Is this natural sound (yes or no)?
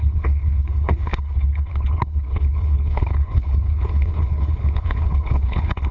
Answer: no